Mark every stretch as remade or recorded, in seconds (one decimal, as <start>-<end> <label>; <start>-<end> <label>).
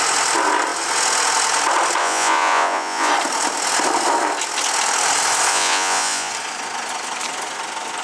0.0-2.0 recorded; 2.0-3.1 remade; 3.1-5.5 recorded; 5.5-6.3 remade; 6.3-8.0 recorded